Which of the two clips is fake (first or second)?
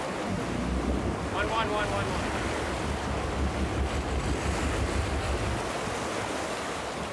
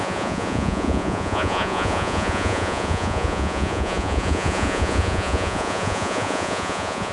second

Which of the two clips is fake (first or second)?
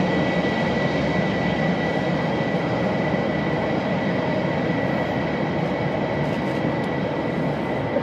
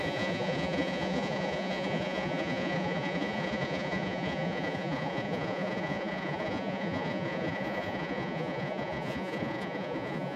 second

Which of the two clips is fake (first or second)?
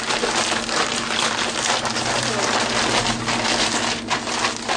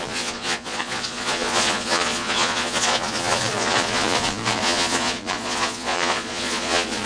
second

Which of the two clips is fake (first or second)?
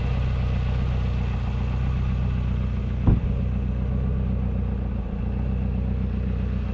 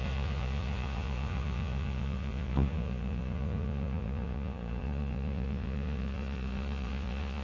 second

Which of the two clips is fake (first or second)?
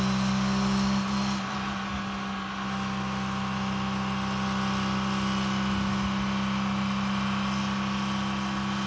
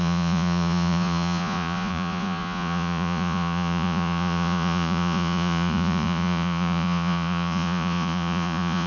second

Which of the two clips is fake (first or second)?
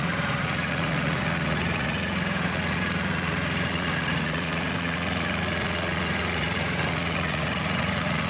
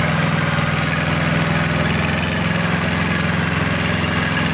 first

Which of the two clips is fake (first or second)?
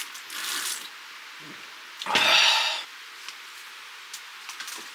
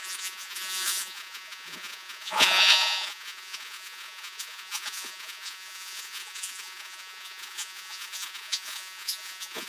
second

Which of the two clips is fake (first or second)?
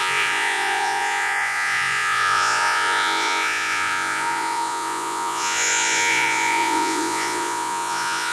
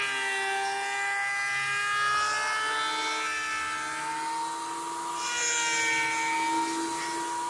first